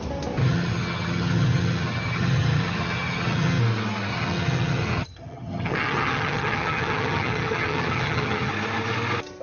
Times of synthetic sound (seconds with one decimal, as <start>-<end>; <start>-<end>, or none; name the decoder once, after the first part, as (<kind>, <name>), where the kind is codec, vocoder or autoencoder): 0.4-3.6 (vocoder, HiFi-GAN); 4.1-8.5